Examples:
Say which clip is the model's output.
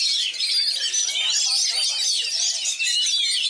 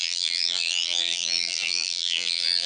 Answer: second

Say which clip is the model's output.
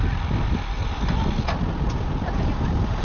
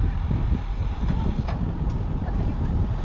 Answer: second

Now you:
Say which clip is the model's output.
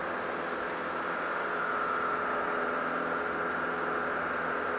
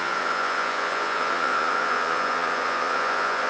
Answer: second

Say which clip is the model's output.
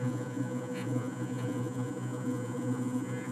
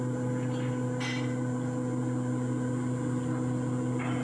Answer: first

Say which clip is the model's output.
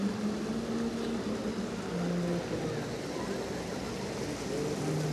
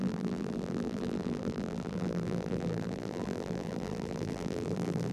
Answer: second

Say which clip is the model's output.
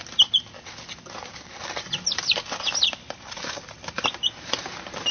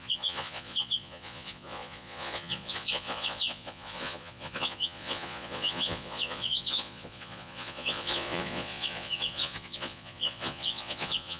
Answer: second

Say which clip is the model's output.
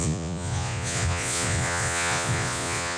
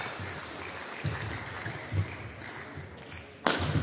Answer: first